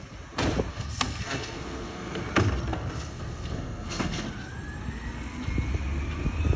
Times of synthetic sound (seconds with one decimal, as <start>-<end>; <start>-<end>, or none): 0.7-2.2; 2.7-4.3